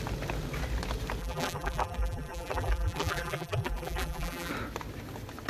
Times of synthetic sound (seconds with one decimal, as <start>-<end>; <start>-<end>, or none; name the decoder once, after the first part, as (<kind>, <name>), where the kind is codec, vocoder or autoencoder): 1.2-4.5 (vocoder, BigVGAN v2)